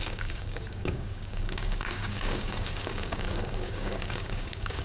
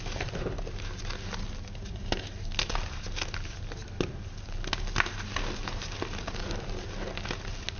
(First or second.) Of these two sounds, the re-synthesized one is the first